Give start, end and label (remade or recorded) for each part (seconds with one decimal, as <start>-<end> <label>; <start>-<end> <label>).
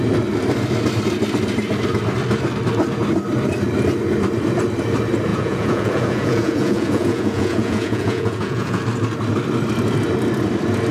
0.0-5.3 recorded; 5.3-8.8 remade; 8.8-10.9 recorded